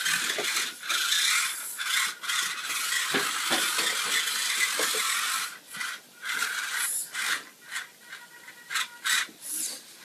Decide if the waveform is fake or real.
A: real